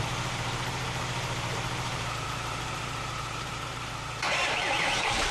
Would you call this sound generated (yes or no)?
yes